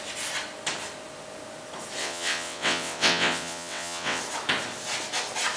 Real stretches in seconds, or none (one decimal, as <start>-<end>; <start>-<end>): 0.0-2.0; 4.2-5.6